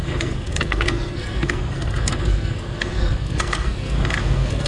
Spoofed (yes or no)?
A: yes